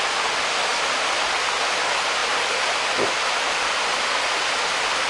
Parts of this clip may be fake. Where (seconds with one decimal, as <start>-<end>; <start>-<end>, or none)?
none